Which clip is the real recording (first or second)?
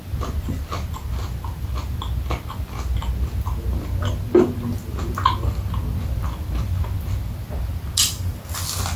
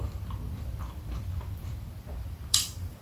first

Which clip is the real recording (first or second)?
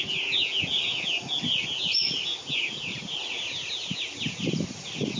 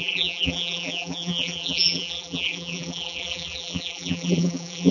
first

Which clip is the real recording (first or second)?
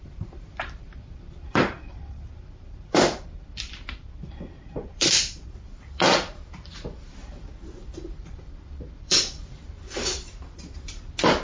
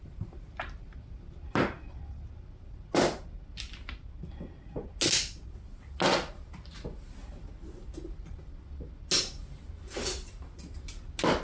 second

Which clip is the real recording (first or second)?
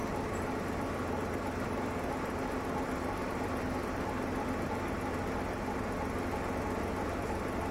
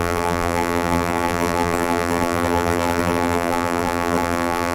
first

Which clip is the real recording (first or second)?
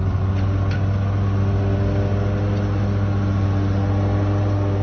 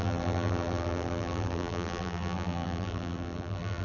first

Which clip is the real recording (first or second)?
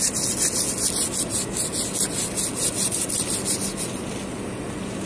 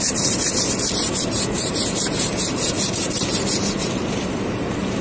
first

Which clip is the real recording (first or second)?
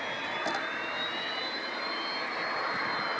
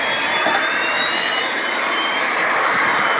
first